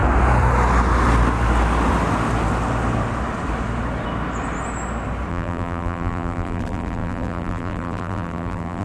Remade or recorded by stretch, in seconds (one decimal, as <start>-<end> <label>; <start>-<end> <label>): 0.0-5.3 recorded; 5.3-8.8 remade

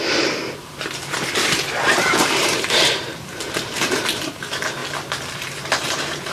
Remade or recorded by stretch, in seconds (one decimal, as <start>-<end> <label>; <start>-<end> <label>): 0.0-4.8 remade; 4.8-5.4 recorded; 5.4-6.3 remade

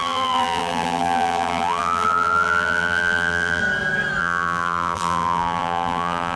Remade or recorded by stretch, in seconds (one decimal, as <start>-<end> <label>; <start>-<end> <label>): 0.0-3.6 remade; 3.6-4.2 recorded; 4.2-6.4 remade